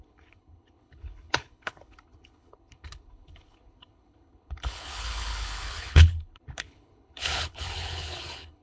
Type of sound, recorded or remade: remade